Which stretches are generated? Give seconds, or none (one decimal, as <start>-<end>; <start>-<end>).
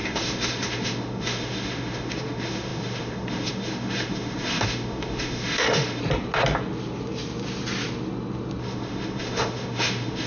0.0-6.0; 8.6-10.3